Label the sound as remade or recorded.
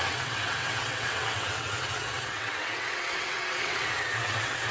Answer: remade